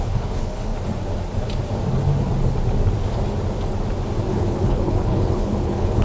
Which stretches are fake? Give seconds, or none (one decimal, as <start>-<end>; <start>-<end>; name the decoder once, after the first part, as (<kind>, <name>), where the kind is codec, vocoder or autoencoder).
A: 0.0-0.7 (codec, HILCodec); 4.3-6.0